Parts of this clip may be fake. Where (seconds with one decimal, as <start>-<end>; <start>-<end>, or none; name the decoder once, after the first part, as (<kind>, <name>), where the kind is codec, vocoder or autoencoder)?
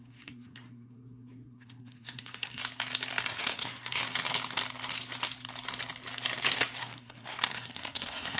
0.0-2.6 (codec, SNAC); 3.2-4.0; 6.8-8.4